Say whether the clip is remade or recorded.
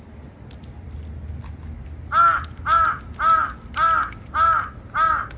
recorded